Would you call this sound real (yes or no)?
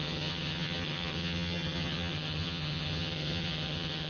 no